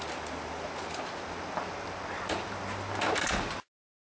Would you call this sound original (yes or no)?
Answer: yes